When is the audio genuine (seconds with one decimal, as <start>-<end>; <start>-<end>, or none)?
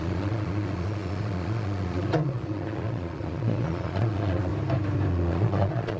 4.5-5.1